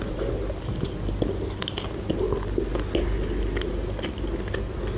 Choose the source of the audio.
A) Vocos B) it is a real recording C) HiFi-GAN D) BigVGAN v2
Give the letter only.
B